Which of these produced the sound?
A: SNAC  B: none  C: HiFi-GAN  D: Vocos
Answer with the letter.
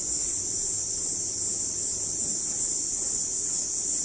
B